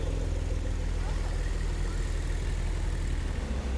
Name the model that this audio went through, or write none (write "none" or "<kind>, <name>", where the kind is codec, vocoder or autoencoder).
none